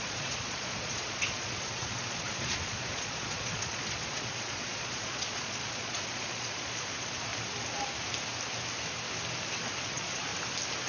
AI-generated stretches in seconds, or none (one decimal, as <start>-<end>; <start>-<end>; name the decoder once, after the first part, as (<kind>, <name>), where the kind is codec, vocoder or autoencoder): 0.0-7.3 (vocoder, Vocos); 9.8-10.3

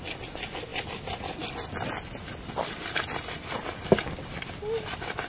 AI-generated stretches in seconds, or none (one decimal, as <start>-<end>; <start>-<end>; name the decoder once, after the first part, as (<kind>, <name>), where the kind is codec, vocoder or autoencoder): none

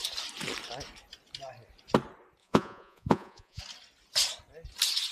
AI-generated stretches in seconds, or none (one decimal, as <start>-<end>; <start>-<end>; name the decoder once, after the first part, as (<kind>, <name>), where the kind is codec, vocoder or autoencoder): 2.4-3.6 (vocoder, Vocos)

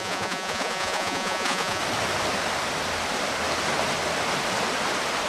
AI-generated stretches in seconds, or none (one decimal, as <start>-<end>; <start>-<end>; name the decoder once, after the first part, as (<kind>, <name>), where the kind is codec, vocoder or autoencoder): 0.0-1.8 (vocoder, Vocos)